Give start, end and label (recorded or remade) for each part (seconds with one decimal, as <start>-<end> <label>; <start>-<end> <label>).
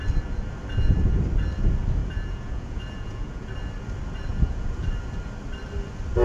0.0-2.0 recorded; 2.0-3.5 remade; 3.5-4.3 recorded; 4.3-4.8 remade; 4.8-6.2 recorded